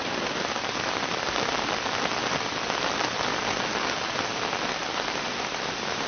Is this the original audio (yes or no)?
yes